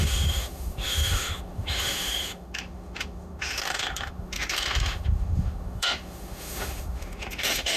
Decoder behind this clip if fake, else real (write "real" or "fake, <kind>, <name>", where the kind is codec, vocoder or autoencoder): fake, autoencoder, DAC-VAE